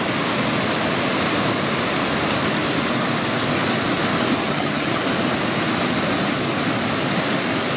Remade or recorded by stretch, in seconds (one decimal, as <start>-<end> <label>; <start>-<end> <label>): 0.0-4.4 recorded; 4.4-5.0 remade; 5.0-7.8 recorded